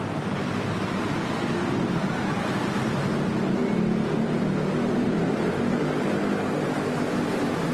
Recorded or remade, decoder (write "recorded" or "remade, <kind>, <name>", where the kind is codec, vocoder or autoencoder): recorded